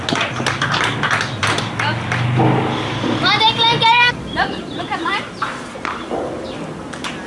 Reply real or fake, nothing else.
real